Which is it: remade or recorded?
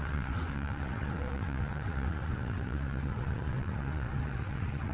remade